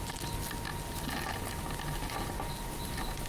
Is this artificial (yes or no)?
no